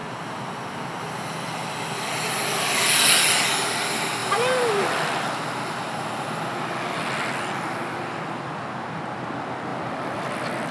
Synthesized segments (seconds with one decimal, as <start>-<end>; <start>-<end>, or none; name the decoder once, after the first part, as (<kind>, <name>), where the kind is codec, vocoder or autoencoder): 4.2-4.7 (vocoder, BigVGAN v2); 9.7-10.2